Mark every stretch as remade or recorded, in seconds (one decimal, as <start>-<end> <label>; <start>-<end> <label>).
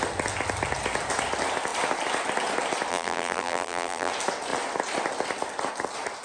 0.0-2.9 recorded; 2.9-4.1 remade; 4.1-6.2 recorded